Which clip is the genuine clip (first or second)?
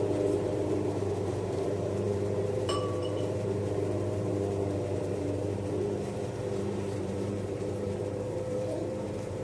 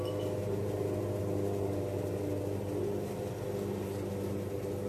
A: second